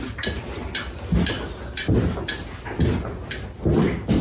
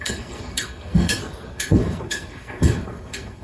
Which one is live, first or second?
first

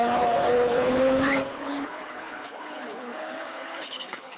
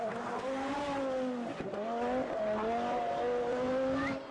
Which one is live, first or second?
second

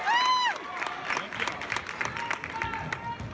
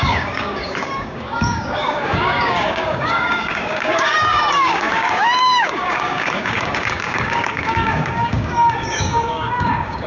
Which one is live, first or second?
first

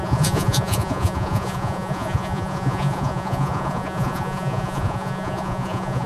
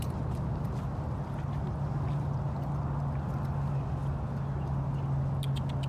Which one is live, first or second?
second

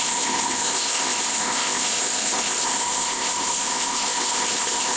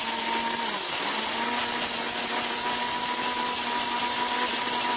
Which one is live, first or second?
second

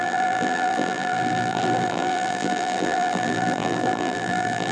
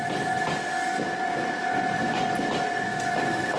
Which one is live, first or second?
second